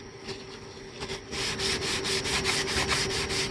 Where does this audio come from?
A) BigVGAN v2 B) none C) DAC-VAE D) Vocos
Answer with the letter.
B